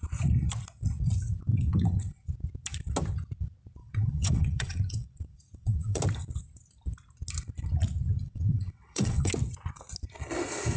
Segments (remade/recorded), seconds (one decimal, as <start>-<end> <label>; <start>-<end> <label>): 0.0-1.5 recorded; 1.5-2.3 remade; 2.3-3.8 recorded; 3.8-6.0 remade; 6.0-8.2 recorded; 8.2-9.3 remade; 9.3-10.8 recorded